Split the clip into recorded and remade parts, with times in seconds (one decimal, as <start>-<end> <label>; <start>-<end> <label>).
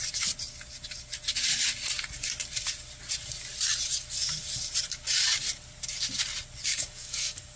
0.0-6.7 recorded; 6.7-7.6 remade